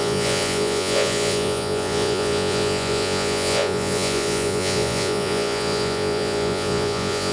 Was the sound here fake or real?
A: fake